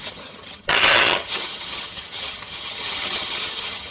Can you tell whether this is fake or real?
fake